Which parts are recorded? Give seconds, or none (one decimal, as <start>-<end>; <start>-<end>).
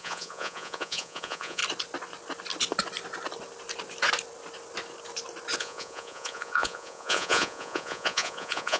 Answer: 1.6-5.6